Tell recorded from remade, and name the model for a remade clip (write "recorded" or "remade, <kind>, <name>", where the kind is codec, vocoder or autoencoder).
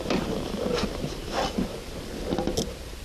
recorded